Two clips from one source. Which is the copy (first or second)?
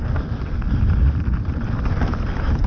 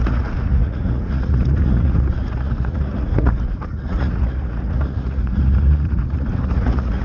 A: second